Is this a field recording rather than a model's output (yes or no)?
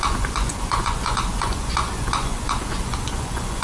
no